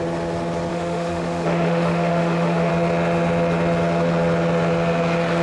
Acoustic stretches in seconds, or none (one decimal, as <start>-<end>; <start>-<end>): 0.0-0.7; 2.7-5.4

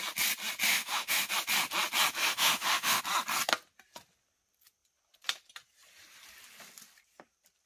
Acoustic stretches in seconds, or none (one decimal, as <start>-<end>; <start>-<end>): 0.0-0.7; 1.3-2.2; 3.0-7.7

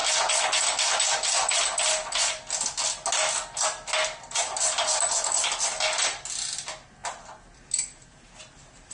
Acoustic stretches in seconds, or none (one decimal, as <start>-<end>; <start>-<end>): 0.0-8.9